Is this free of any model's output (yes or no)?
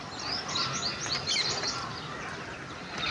yes